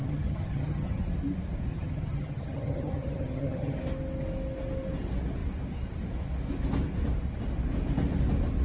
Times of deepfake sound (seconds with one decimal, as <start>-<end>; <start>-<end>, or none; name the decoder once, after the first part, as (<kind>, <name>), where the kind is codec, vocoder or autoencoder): 0.0-1.0 (vocoder, HiFi-GAN); 1.7-3.8